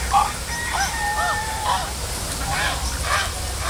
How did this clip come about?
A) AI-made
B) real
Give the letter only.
B